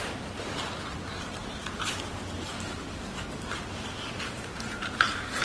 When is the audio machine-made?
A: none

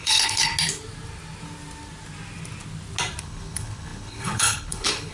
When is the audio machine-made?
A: 0.0-0.5 (codec, HILCodec); 3.2-5.1

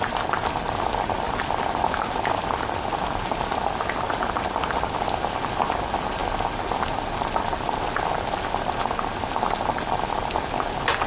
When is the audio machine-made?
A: none

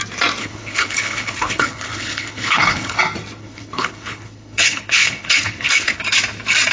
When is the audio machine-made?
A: 0.4-3.0 (codec, HILCodec); 3.4-6.0

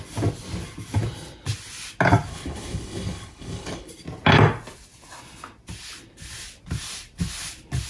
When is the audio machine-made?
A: 2.3-3.9 (codec, HILCodec)